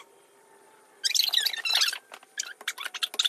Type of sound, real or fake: real